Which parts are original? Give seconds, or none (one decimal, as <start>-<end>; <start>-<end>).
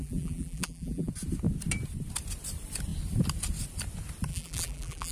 1.1-4.3